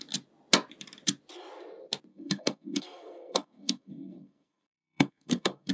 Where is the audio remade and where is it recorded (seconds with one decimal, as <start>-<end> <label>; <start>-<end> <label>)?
0.0-2.1 recorded; 2.1-5.7 remade